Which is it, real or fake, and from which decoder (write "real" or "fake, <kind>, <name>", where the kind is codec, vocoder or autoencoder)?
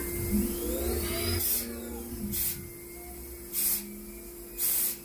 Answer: real